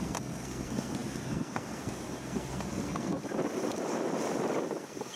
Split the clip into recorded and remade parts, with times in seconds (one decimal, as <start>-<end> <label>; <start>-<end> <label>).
0.0-3.2 remade; 3.2-4.7 recorded; 4.7-5.2 remade